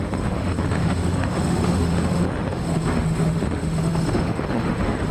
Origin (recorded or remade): remade